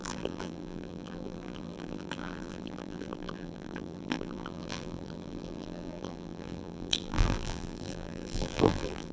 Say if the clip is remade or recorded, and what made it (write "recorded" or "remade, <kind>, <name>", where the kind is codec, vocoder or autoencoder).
remade, vocoder, BigVGAN v2